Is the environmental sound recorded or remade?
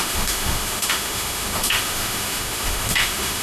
remade